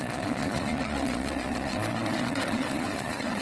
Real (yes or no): no